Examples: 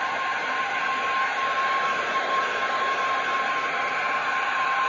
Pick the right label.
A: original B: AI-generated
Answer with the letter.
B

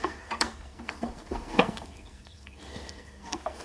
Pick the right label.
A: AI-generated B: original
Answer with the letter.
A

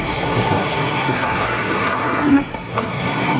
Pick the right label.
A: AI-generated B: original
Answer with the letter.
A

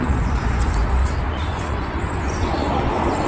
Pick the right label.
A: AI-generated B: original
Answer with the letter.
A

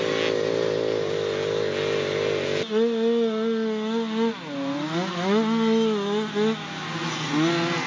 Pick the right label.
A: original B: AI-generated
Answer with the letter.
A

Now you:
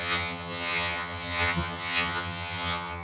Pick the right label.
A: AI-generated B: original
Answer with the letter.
A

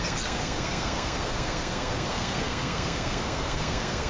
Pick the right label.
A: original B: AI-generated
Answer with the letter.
B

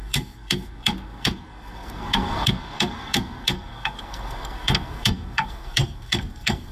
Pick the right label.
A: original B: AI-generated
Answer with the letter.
B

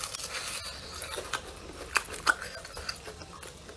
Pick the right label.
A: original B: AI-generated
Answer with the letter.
A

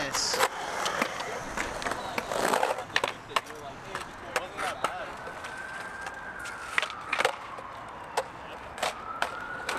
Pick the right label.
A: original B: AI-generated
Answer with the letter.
A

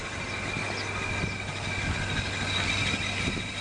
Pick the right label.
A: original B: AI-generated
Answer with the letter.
A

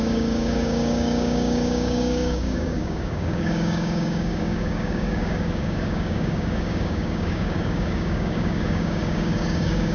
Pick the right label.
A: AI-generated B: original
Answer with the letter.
A